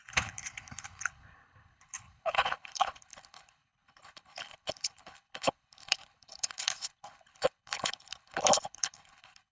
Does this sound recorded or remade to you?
remade